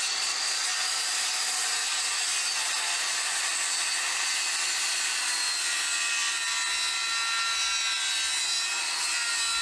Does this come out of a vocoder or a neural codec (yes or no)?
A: no